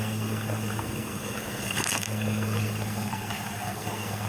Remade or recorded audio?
remade